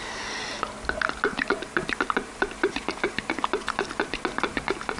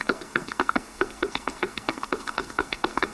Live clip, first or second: first